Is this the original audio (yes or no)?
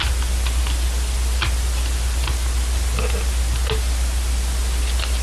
yes